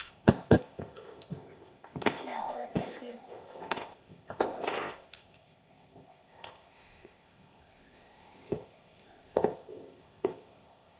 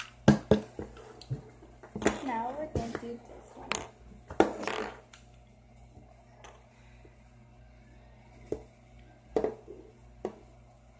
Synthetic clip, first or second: first